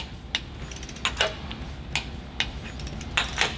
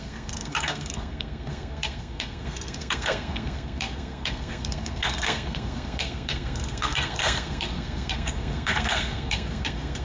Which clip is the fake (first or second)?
second